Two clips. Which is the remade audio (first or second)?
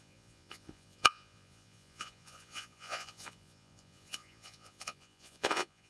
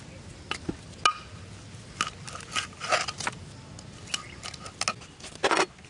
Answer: first